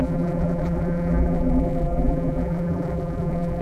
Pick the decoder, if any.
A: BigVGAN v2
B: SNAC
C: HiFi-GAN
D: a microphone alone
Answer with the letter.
A